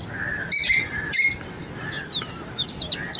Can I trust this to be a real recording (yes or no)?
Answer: yes